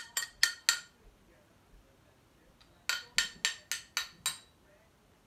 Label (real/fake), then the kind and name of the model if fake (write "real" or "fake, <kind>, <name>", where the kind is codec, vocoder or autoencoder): real